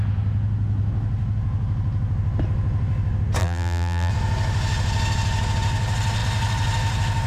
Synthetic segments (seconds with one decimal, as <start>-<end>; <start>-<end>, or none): 3.4-4.1